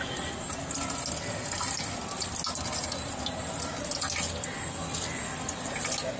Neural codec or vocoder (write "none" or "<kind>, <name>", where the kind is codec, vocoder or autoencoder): none